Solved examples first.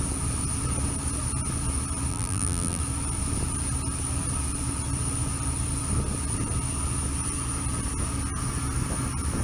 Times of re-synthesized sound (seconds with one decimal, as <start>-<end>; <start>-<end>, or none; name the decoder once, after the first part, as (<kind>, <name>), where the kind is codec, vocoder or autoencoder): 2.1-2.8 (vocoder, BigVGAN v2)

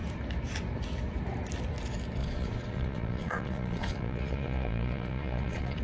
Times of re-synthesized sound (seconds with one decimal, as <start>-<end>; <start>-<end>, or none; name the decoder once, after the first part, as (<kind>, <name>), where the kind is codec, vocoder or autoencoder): 2.2-5.8 (vocoder, Vocos)

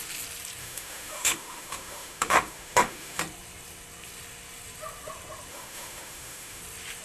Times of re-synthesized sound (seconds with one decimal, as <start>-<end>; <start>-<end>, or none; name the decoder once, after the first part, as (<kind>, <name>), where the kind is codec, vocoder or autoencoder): 0.6-3.2 (autoencoder, DAC-VAE); 5.5-6.6

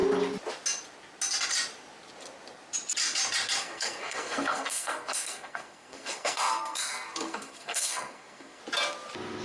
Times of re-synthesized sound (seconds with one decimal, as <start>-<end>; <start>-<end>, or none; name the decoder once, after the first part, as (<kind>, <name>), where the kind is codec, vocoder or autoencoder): 3.6-8.6 (codec, SNAC)

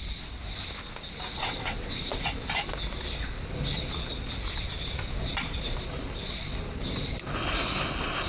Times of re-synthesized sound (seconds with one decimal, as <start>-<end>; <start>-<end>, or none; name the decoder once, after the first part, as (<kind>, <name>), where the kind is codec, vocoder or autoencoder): 1.4-2.2 (vocoder, WaveNeXt)

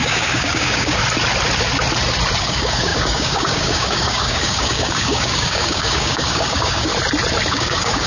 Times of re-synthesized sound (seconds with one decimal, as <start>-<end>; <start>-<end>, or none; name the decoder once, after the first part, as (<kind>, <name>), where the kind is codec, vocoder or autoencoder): 0.0-1.0 (codec, DAC); 2.4-6.9; 7.5-8.1